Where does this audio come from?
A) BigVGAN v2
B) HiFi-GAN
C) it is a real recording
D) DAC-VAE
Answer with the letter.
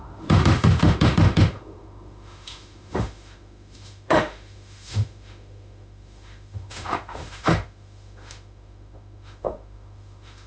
D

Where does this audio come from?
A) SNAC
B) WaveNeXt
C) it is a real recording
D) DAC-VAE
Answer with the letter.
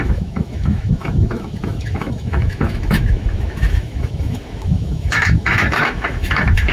D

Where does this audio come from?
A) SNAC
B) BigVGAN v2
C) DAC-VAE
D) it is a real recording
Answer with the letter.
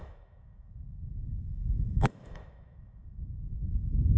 C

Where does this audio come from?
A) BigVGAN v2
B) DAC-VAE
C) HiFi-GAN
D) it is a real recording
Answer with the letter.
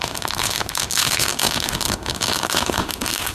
B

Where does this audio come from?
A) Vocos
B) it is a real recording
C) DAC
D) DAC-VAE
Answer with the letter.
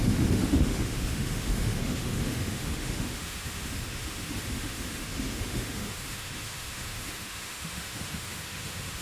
D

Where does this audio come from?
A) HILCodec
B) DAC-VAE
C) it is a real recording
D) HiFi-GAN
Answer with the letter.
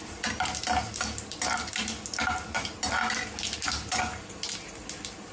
C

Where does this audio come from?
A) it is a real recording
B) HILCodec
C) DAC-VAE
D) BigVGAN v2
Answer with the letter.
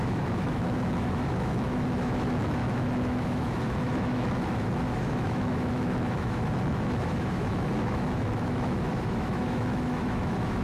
C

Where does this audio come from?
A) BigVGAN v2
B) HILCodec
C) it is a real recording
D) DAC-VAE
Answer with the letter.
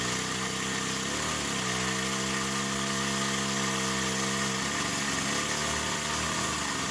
C